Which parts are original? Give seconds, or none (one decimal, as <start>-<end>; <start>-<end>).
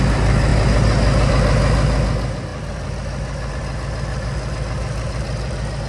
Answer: 0.0-5.9